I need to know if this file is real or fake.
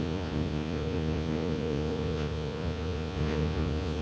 fake